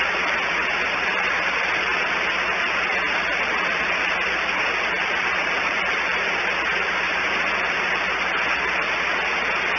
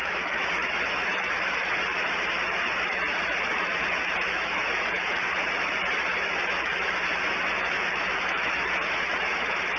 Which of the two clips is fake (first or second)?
second